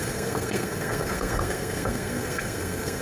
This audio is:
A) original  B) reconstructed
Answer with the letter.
B